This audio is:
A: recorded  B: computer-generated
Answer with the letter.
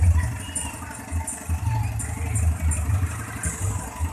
A